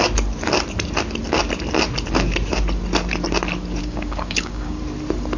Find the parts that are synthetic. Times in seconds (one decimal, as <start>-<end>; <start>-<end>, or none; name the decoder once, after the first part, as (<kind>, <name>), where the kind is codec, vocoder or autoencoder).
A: 3.8-4.8 (codec, DAC)